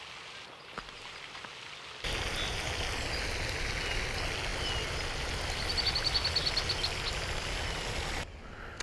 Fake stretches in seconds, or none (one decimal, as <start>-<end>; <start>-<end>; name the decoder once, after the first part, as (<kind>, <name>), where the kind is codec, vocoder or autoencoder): none